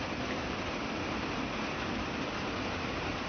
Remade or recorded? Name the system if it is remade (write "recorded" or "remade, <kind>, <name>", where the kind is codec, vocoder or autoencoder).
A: recorded